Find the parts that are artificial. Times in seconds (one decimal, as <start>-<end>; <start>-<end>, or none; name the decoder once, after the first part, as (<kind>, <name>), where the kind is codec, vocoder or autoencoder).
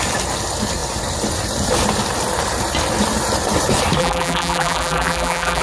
4.0-5.6 (vocoder, BigVGAN v2)